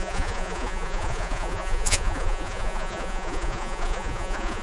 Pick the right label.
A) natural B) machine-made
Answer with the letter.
B